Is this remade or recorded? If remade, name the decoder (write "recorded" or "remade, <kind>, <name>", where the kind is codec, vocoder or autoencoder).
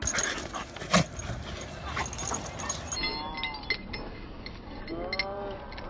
recorded